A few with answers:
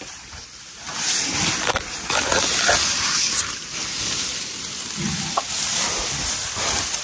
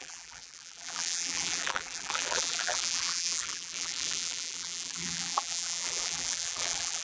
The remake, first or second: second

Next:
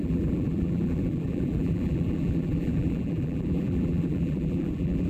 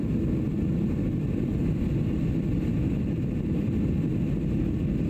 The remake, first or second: first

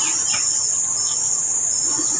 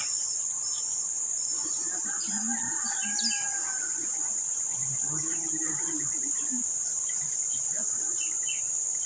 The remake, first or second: second